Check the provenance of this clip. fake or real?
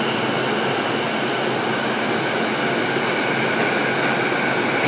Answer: real